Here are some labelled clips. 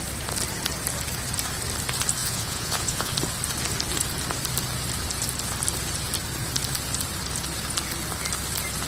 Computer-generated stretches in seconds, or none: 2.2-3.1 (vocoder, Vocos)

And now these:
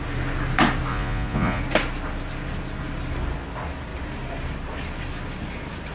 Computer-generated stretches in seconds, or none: 0.9-1.6 (vocoder, Vocos)

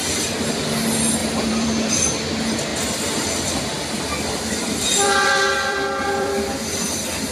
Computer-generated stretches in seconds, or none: 1.2-1.9 (vocoder, BigVGAN v2); 4.7-6.3

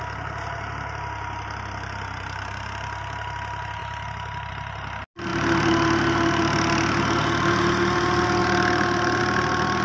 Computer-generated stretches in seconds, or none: 3.8-4.5 (vocoder, BigVGAN v2)

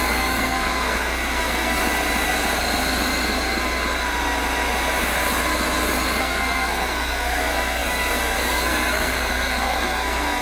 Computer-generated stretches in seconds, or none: 0.0-1.8 (codec, SNAC); 6.2-10.4